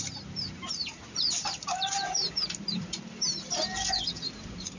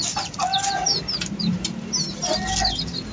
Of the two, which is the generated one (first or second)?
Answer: first